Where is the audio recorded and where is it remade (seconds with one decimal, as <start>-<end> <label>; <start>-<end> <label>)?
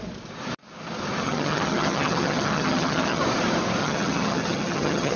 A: 0.0-1.2 recorded; 1.2-3.2 remade; 3.2-3.8 recorded; 3.8-5.2 remade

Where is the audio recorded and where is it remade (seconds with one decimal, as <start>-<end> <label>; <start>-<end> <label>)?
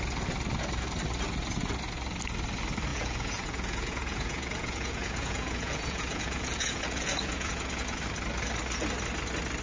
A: 0.0-2.9 recorded; 2.9-8.0 remade; 8.0-9.6 recorded